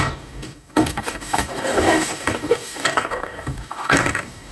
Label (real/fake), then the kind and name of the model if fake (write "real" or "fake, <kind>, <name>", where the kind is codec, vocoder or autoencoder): fake, codec, DAC